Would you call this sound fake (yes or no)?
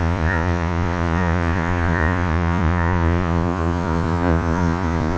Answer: yes